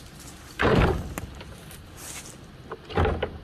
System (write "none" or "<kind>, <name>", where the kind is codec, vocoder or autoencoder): none